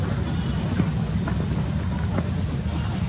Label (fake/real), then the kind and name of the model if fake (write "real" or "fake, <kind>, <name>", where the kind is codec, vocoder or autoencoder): real